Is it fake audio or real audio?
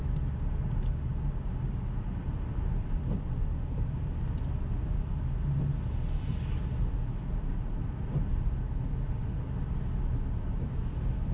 real